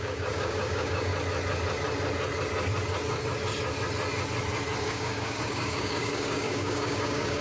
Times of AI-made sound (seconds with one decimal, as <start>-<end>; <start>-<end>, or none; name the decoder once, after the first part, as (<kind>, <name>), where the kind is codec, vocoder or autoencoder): 0.0-1.1 (codec, DAC); 4.8-7.4